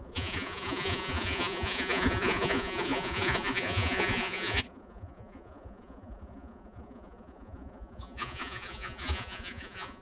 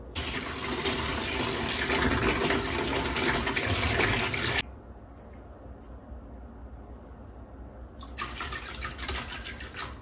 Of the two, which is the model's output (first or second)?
first